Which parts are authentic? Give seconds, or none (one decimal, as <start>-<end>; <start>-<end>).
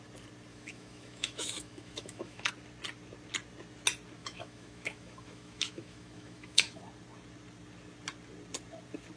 0.0-0.5; 2.5-4.2; 6.8-9.2